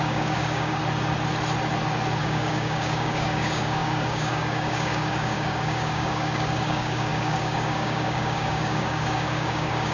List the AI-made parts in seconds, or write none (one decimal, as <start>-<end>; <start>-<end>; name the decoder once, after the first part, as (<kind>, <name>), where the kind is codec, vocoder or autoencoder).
0.0-0.8 (codec, DAC); 2.2-9.9